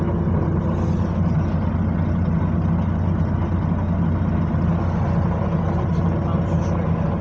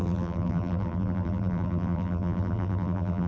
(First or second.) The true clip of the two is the first